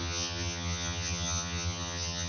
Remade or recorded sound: remade